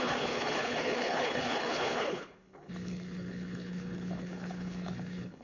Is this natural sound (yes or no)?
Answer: no